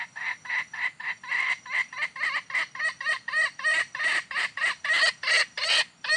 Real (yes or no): yes